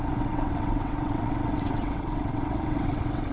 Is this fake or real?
fake